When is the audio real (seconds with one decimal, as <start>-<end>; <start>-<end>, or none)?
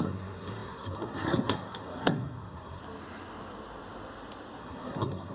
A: 2.8-4.6